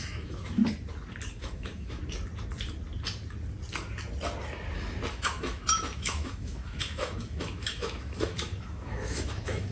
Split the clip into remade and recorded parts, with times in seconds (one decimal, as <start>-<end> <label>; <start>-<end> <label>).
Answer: 0.0-0.6 remade; 0.6-1.3 recorded; 1.3-2.0 remade; 2.0-5.1 recorded; 5.1-9.7 remade